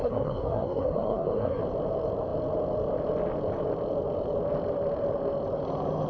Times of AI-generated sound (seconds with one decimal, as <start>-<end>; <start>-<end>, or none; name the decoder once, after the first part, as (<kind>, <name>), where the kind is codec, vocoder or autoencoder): 0.0-1.6 (codec, SNAC)